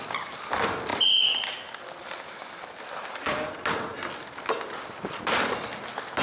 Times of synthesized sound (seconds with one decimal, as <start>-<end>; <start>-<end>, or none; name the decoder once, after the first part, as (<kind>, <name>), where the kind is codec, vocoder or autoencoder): none